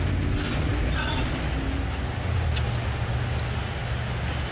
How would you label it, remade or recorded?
recorded